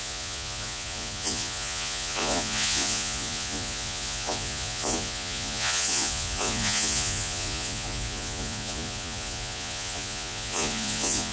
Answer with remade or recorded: remade